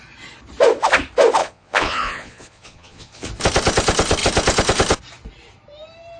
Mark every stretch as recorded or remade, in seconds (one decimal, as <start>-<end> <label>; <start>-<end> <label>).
0.0-1.4 recorded; 1.4-3.3 remade; 3.3-6.2 recorded